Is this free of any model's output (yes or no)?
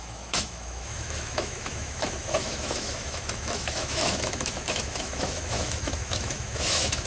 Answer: no